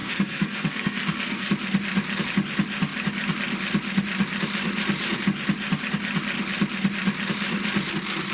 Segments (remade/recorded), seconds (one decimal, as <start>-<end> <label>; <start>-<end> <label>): 0.0-1.5 remade; 1.5-8.3 recorded